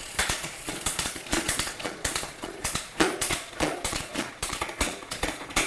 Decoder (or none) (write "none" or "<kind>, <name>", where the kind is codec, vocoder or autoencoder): vocoder, Vocos